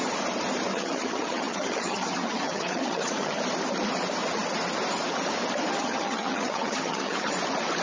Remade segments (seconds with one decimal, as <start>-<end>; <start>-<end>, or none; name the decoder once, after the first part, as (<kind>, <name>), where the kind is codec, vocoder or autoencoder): 0.7-3.4 (vocoder, HiFi-GAN); 5.8-7.3